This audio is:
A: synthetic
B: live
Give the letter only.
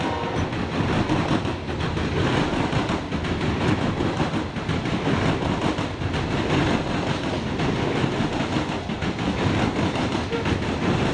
B